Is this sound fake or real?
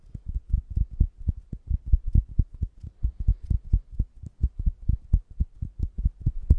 real